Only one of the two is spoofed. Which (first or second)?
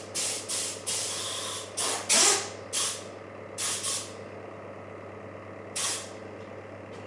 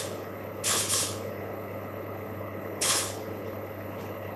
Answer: second